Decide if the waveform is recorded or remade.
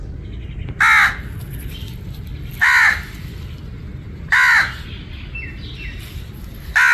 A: recorded